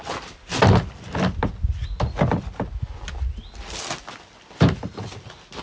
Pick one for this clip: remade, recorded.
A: recorded